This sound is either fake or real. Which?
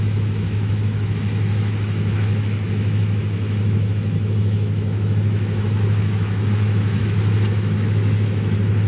fake